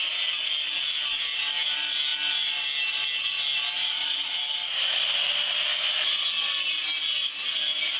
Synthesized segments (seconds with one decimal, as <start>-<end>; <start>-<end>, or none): 3.8-4.4